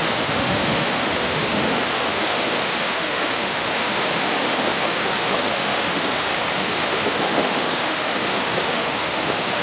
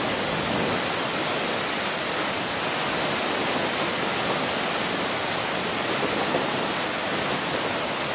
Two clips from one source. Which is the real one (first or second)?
second